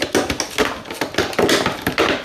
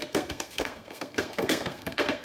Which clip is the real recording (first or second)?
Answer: first